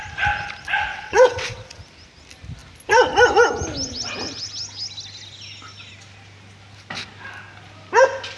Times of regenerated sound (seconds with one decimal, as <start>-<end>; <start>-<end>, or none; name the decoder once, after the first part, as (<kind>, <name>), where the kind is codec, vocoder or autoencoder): 0.9-1.8 (vocoder, WaveNeXt)